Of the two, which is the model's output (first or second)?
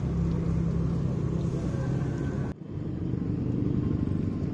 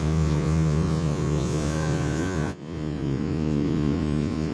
second